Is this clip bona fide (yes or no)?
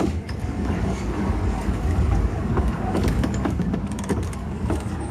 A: no